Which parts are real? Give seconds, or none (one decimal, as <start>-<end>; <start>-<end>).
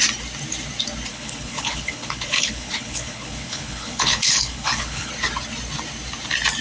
0.0-1.1; 5.1-6.6